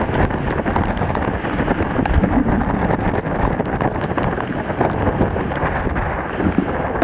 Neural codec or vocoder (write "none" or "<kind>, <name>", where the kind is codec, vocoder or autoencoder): none